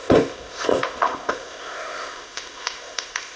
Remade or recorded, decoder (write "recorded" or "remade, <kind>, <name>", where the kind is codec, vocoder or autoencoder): remade, codec, ZipCodec